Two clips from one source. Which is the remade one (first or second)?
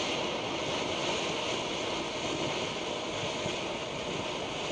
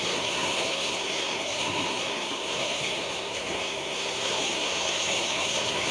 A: second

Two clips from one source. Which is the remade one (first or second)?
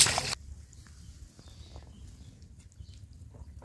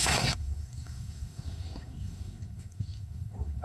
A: second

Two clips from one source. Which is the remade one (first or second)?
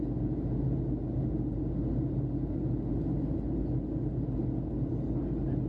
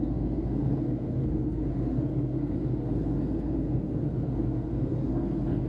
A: second